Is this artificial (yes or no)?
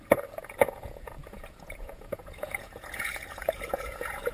yes